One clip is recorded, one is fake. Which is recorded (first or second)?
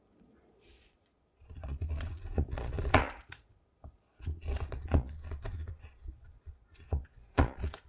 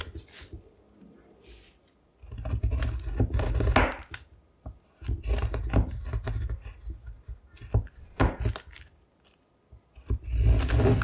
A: second